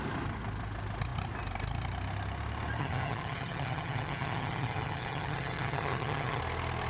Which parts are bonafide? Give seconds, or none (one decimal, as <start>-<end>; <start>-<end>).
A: 0.0-2.8; 6.4-6.9